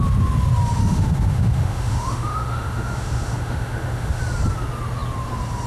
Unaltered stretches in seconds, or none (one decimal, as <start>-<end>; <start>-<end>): 0.0-0.8; 4.2-5.7